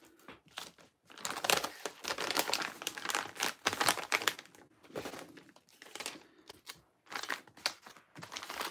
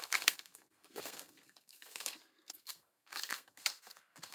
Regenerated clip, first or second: second